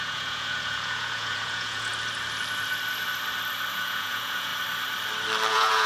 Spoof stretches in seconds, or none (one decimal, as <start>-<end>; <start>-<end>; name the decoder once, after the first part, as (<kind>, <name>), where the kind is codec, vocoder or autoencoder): 0.0-1.9 (vocoder, Vocos); 3.7-4.5; 5.5-5.9